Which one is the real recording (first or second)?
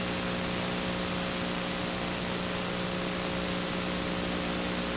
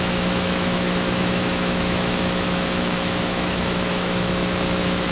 first